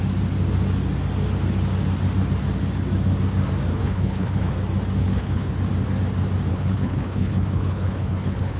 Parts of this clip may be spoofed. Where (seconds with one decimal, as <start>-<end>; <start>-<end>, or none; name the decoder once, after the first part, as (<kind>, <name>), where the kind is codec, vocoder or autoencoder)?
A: 3.7-4.5 (codec, HILCodec); 5.0-5.5; 6.5-8.6

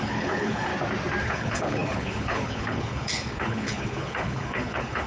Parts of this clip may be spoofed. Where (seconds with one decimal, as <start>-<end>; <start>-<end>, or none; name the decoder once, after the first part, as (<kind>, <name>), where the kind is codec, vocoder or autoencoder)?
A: 0.0-0.7 (codec, HILCodec); 1.2-5.1